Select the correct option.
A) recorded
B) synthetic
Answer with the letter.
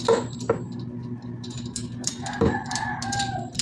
B